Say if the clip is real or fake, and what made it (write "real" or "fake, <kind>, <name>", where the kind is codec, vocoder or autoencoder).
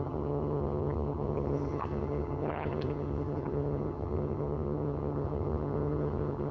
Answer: fake, vocoder, HiFi-GAN